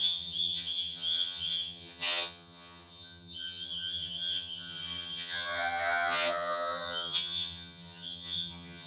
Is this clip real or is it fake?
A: fake